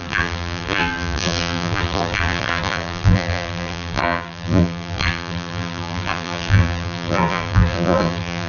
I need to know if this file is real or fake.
fake